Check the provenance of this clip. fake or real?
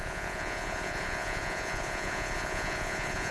fake